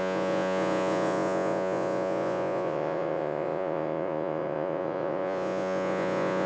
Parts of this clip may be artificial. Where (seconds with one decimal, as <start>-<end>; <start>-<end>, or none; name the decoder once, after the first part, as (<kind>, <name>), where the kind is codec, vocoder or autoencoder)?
0.0-6.5 (vocoder, Vocos)